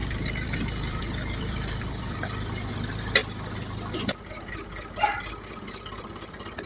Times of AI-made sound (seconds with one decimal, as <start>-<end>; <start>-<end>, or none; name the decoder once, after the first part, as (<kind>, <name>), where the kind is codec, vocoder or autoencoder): 0.0-2.7 (vocoder, BigVGAN v2); 3.2-4.3